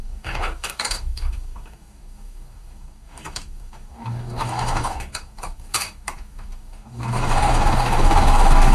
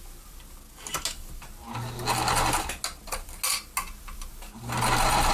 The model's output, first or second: first